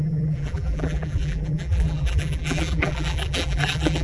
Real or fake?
fake